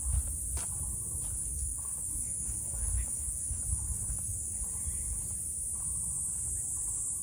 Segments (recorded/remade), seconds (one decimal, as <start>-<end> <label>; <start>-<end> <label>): 0.0-1.4 recorded; 1.4-4.6 remade; 4.6-7.2 recorded